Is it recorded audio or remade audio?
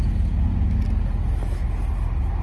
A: recorded